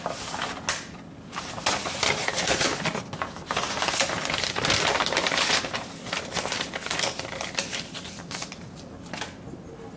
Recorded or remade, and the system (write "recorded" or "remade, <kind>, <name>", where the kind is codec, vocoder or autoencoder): recorded